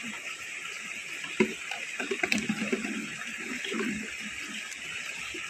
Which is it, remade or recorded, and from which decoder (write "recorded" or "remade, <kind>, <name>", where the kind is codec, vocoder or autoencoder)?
recorded